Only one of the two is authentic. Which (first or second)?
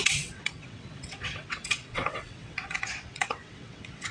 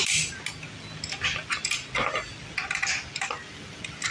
second